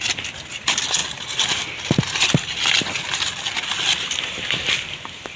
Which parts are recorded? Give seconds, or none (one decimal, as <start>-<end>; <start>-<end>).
0.0-5.4